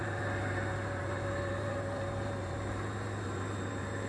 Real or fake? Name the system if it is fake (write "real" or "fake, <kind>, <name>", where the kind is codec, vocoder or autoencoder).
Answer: fake, vocoder, BigVGAN v2